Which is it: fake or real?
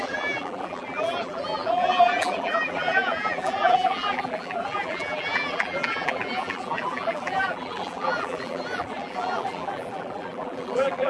fake